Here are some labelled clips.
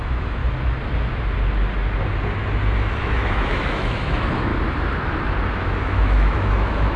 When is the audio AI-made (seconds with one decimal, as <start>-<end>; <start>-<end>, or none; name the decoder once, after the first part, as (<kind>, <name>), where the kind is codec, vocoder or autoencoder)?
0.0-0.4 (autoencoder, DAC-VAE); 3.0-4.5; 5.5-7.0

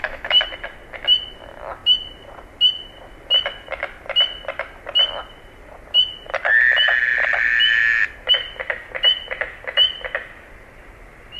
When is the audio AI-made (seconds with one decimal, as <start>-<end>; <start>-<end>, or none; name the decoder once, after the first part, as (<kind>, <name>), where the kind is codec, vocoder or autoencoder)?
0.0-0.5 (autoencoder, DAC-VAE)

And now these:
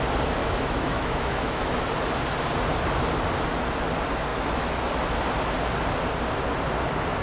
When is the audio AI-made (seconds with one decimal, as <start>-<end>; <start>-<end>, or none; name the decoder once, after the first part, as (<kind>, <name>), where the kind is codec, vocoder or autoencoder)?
0.4-1.8 (autoencoder, DAC-VAE); 4.3-4.8